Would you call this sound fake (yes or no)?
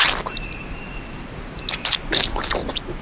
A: no